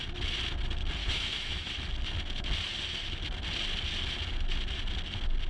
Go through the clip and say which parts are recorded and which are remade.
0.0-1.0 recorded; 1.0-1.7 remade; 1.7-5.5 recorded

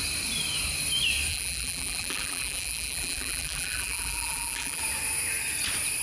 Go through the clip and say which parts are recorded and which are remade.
0.0-1.3 recorded; 1.3-4.8 remade; 4.8-6.0 recorded

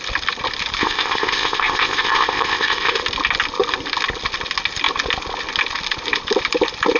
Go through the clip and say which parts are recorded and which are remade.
0.0-0.8 recorded; 0.8-3.0 remade; 3.0-7.0 recorded

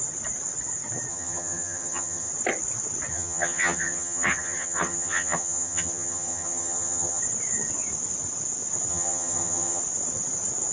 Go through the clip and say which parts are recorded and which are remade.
0.0-1.1 recorded; 1.1-2.3 remade; 2.3-3.1 recorded; 3.1-7.2 remade; 7.2-8.9 recorded; 8.9-9.8 remade; 9.8-10.7 recorded

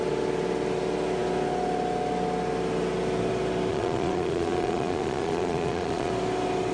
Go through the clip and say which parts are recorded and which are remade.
0.0-3.7 recorded; 3.7-6.1 remade; 6.1-6.7 recorded

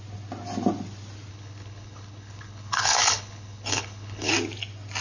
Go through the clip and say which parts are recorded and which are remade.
0.0-1.3 recorded; 1.3-4.3 remade; 4.3-5.0 recorded